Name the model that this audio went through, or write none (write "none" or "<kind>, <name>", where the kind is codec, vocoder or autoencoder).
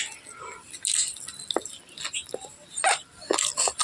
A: none